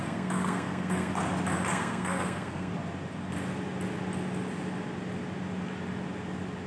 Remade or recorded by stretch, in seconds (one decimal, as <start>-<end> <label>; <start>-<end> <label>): 0.0-1.1 remade; 1.1-1.7 recorded; 1.7-2.7 remade; 2.7-6.7 recorded